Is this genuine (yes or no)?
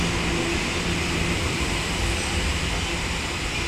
yes